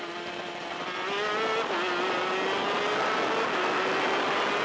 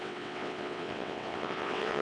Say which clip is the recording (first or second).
first